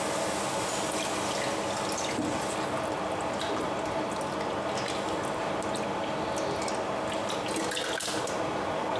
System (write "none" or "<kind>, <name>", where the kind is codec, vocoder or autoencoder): none